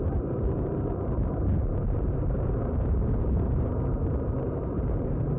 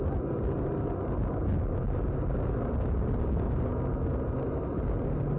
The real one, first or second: second